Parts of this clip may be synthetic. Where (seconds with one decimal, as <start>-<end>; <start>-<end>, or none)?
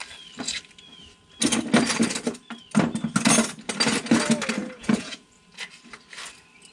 4.6-5.3